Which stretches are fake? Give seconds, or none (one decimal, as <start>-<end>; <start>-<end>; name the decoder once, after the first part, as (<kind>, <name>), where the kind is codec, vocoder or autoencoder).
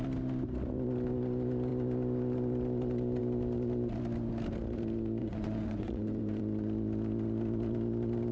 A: 5.2-6.4 (vocoder, Vocos)